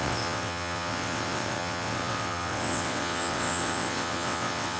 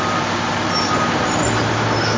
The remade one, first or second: first